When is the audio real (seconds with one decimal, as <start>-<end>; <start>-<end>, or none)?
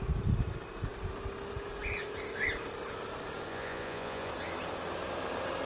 0.0-3.5; 4.3-5.7